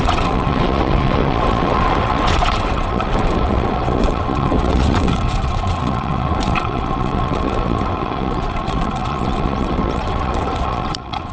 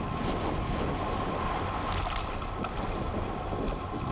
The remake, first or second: first